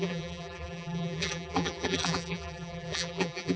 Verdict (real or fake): fake